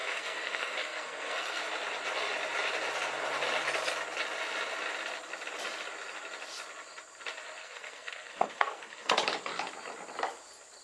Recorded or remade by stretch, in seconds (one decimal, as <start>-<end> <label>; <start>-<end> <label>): 0.0-1.6 remade; 1.6-7.6 recorded; 7.6-9.1 remade; 9.1-10.8 recorded